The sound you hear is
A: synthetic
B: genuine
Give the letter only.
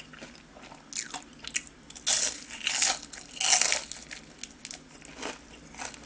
B